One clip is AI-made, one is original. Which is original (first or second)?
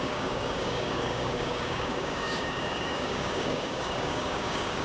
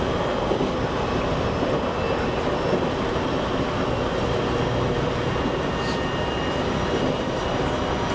second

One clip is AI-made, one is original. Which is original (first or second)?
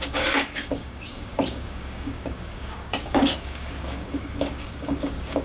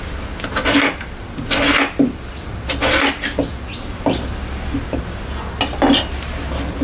second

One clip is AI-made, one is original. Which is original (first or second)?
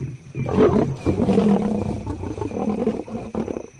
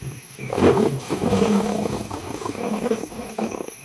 first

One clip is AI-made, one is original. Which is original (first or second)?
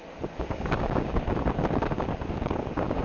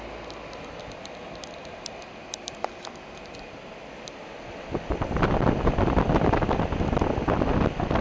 second